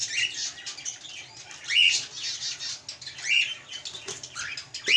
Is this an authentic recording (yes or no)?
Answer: yes